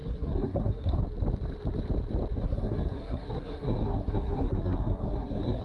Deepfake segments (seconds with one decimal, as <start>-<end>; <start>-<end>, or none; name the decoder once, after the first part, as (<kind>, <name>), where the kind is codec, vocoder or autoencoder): 0.0-1.0 (codec, SNAC); 2.4-5.6